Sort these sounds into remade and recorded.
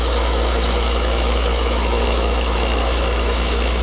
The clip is remade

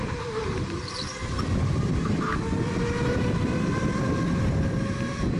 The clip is remade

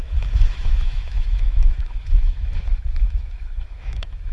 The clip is remade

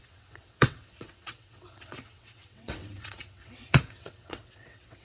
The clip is remade